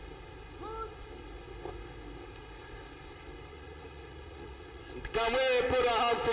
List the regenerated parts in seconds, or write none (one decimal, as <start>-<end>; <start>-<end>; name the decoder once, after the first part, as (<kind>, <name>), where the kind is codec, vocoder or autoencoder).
3.5-4.8 (vocoder, Vocos)